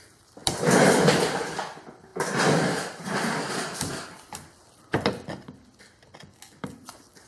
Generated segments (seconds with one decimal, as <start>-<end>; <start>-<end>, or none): 0.4-1.4; 2.1-5.8